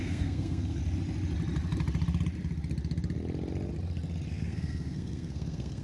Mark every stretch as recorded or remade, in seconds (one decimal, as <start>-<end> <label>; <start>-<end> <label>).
0.0-0.8 remade; 0.8-4.3 recorded; 4.3-5.8 remade